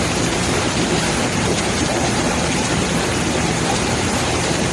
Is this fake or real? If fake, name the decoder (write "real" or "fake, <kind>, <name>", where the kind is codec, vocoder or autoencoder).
fake, vocoder, BigVGAN v2